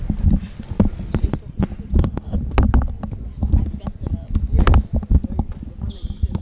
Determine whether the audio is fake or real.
real